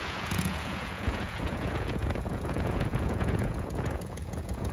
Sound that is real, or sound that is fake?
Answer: fake